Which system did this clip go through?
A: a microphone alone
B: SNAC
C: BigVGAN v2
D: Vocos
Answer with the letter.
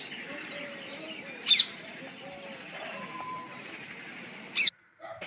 A